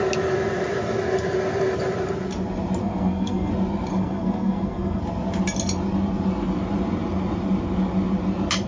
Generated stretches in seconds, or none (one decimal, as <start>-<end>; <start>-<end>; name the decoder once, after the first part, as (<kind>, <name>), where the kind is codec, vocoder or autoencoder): 2.8-3.5 (codec, SNAC); 3.9-5.0